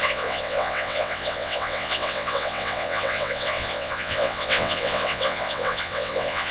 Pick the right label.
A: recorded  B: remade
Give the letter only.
B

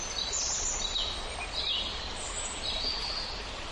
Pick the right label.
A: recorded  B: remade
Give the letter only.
A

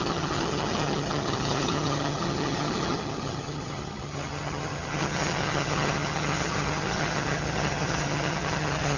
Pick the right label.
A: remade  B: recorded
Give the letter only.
A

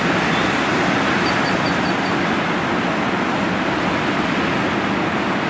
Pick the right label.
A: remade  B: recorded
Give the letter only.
B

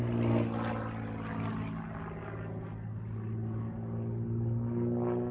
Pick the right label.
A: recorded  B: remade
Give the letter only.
A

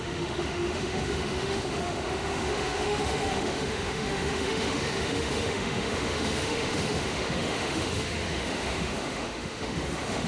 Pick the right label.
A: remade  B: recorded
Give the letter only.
A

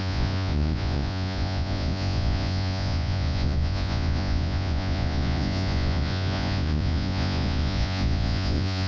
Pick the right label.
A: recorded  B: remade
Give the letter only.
B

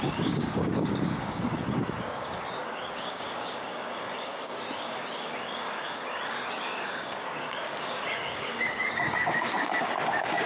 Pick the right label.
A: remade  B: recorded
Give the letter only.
A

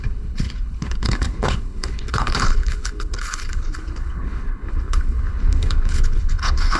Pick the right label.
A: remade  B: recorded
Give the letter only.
A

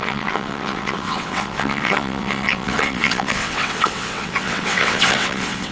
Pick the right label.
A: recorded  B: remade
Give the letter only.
B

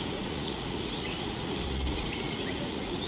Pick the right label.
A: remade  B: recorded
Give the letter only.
A